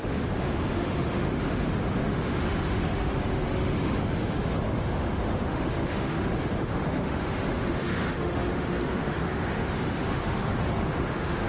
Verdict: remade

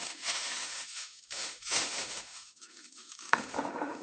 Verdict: remade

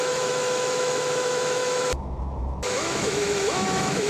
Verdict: remade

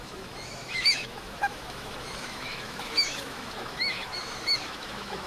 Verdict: remade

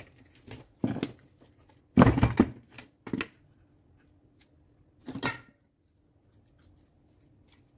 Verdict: recorded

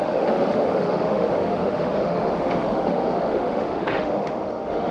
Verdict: remade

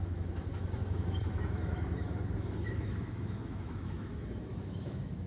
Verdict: remade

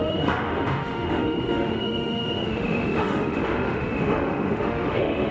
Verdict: remade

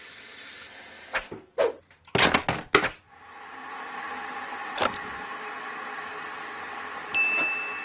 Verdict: recorded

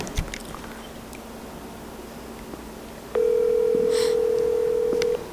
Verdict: recorded